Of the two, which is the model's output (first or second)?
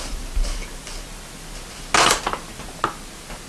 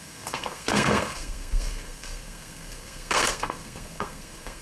second